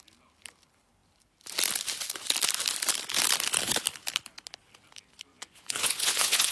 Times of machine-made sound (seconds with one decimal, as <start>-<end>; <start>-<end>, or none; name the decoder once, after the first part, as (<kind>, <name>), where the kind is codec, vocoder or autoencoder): 5.3-6.5 (vocoder, Vocos)